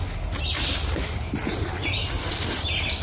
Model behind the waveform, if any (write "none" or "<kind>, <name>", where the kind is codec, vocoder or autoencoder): none